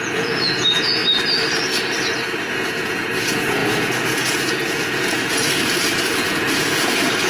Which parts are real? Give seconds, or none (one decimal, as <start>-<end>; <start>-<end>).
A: 1.0-2.5